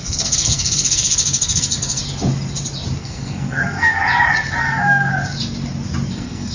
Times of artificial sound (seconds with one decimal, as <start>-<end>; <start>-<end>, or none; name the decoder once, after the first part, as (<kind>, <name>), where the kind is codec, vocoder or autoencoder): 0.0-2.0 (codec, SNAC); 3.0-4.0; 4.6-5.1; 6.1-6.5